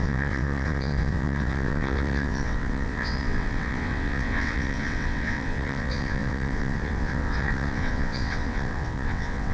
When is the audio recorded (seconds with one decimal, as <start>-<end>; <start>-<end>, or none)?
none